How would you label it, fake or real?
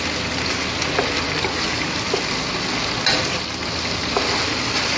real